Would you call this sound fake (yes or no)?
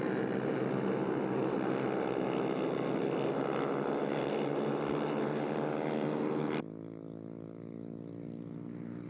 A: no